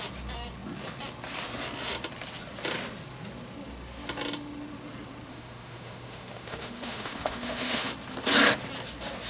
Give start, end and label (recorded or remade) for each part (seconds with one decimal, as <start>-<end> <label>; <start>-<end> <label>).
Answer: 0.0-5.3 recorded; 5.3-7.9 remade; 7.9-9.3 recorded